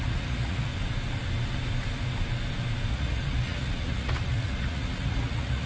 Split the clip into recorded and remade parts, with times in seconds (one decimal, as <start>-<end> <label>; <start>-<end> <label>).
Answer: 0.0-0.7 remade; 0.7-2.9 recorded; 2.9-5.7 remade

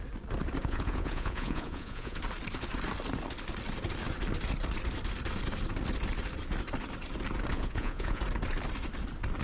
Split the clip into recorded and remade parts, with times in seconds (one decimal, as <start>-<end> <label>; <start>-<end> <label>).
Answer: 0.0-0.6 recorded; 0.6-2.2 remade; 2.2-7.5 recorded; 7.5-8.2 remade; 8.2-9.4 recorded